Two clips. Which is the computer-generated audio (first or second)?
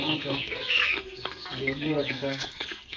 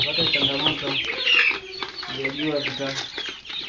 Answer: first